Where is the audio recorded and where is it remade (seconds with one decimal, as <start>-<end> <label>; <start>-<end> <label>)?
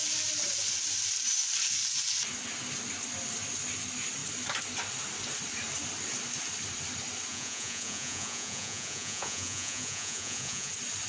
0.0-7.3 recorded; 7.3-10.7 remade; 10.7-11.1 recorded